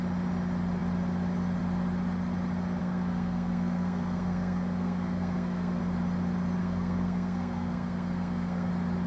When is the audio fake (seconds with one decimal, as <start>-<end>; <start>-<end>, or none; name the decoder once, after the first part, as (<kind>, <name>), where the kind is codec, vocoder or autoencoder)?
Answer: 2.8-5.8 (codec, SNAC); 6.6-8.7